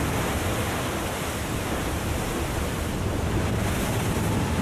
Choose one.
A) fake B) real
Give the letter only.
A